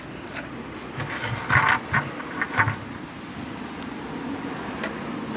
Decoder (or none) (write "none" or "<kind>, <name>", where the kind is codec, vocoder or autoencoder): none